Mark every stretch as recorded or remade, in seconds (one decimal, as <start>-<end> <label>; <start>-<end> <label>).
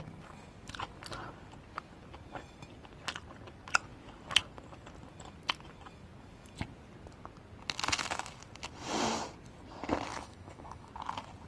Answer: 0.0-10.1 recorded; 10.1-10.9 remade; 10.9-11.5 recorded